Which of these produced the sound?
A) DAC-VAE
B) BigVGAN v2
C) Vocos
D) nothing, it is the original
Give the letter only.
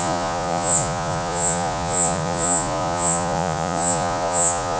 C